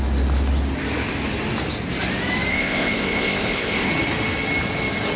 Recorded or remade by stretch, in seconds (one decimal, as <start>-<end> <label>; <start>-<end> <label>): 0.0-2.5 recorded; 2.5-3.9 remade; 3.9-5.2 recorded